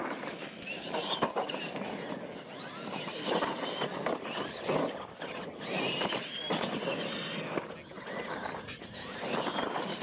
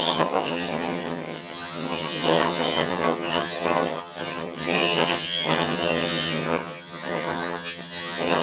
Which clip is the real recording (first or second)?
first